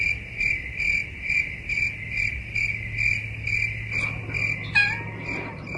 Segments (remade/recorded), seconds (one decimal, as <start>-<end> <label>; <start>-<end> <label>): 0.0-5.8 recorded